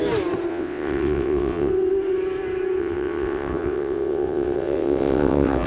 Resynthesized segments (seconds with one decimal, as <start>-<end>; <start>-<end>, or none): 0.5-1.7; 2.8-5.7